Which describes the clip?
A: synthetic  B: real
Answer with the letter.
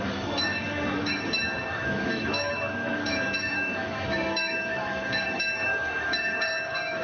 A